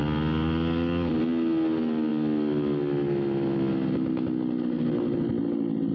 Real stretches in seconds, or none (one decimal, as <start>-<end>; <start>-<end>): 0.0-5.9